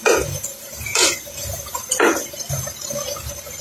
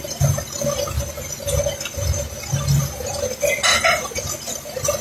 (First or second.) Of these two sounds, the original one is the second